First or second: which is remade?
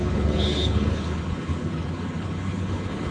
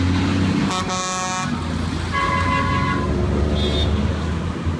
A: first